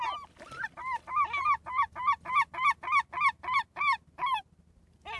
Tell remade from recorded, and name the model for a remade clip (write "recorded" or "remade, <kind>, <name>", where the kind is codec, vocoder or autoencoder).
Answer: recorded